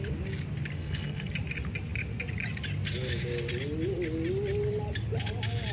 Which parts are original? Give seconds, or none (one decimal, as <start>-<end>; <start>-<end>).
0.0-0.7; 1.3-5.7